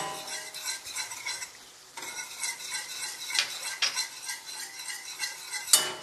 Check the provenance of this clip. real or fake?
real